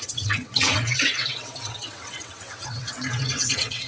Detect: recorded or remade remade